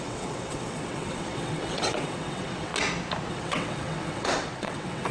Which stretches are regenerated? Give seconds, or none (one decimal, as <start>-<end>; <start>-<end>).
0.0-2.7; 3.3-5.1